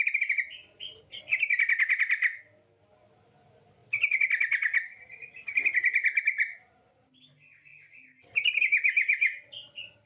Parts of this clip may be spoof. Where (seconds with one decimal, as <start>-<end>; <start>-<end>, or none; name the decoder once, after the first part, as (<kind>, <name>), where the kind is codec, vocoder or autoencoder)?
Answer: none